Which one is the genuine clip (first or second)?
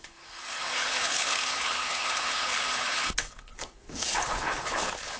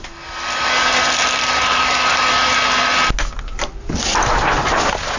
second